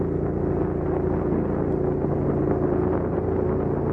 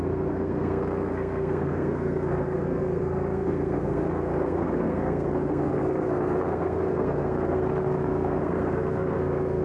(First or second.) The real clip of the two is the first